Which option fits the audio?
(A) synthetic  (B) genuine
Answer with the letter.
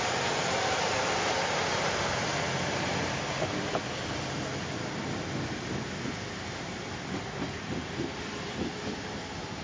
B